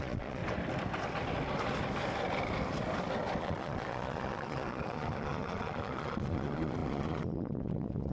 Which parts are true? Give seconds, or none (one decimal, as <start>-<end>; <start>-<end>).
0.4-3.4